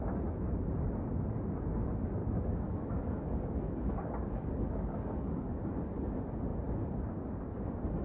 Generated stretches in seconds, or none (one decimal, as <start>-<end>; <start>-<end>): 2.2-5.6